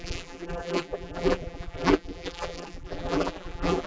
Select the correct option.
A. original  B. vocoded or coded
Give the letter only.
B